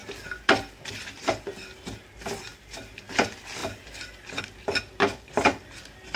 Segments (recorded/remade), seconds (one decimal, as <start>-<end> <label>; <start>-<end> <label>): 0.0-6.2 remade